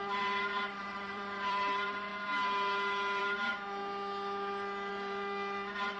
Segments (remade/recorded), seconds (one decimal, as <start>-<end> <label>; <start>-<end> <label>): 0.0-2.1 remade; 2.1-3.2 recorded; 3.2-3.8 remade; 3.8-4.9 recorded; 4.9-6.0 remade